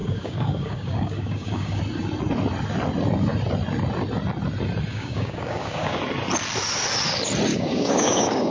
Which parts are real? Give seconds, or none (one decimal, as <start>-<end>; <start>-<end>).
1.8-4.9; 6.0-7.5